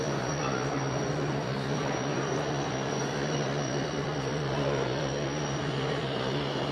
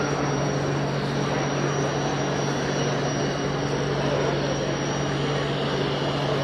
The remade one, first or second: first